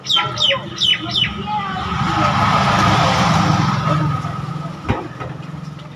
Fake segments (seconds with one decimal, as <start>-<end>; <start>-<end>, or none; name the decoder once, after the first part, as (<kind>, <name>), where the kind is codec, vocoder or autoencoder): none